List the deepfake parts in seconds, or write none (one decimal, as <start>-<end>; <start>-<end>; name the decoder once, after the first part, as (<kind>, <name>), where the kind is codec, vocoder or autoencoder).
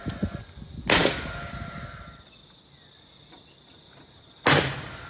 none